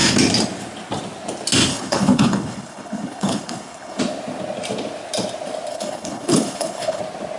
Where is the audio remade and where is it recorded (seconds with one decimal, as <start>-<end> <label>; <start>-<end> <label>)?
0.0-1.7 recorded; 1.7-4.0 remade; 4.0-5.7 recorded; 5.7-7.0 remade; 7.0-7.4 recorded

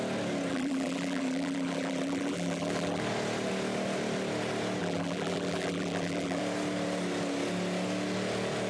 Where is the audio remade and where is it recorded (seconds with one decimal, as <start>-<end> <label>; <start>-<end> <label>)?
0.0-0.5 recorded; 0.5-3.0 remade; 3.0-4.8 recorded; 4.8-6.4 remade; 6.4-8.7 recorded

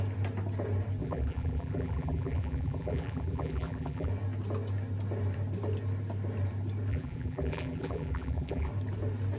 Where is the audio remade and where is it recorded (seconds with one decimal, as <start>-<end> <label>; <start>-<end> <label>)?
0.0-1.0 recorded; 1.0-4.1 remade; 4.1-6.9 recorded; 6.9-8.7 remade; 8.7-9.4 recorded

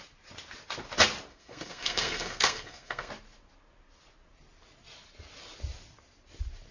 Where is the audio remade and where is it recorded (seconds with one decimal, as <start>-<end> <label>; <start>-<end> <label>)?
0.0-1.3 recorded; 1.3-3.1 remade; 3.1-6.7 recorded

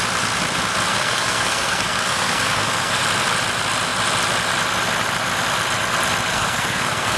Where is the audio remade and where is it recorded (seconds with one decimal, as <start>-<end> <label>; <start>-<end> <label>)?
0.0-0.9 recorded; 0.9-3.0 remade; 3.0-6.3 recorded; 6.3-7.2 remade

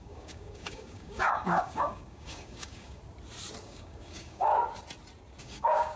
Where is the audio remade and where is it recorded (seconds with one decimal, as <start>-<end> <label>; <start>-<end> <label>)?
0.0-3.0 remade; 3.0-3.6 recorded; 3.6-4.5 remade; 4.5-5.4 recorded; 5.4-6.0 remade